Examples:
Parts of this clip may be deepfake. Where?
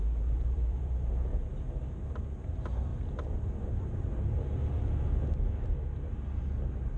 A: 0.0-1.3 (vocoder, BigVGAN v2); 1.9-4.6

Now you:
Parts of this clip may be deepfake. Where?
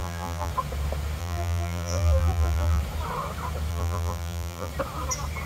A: 0.0-0.5 (vocoder, BigVGAN v2); 1.2-2.8; 3.7-4.7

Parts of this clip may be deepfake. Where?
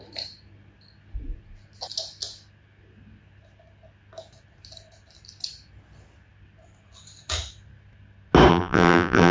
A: 8.5-9.3 (vocoder, BigVGAN v2)